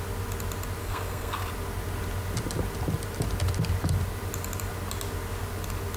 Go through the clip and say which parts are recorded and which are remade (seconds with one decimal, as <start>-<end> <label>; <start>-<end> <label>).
0.0-0.8 recorded; 0.8-1.5 remade; 1.5-6.0 recorded